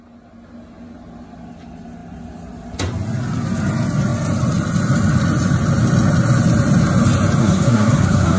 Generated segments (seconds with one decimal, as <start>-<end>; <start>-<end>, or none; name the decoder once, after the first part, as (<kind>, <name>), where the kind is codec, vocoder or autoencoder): 7.4-8.4 (codec, SNAC)